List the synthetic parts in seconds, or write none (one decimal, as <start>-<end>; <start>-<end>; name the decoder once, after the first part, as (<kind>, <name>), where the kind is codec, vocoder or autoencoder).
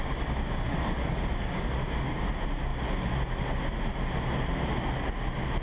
0.0-2.3 (codec, DAC)